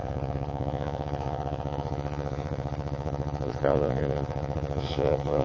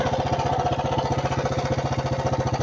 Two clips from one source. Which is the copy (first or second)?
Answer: first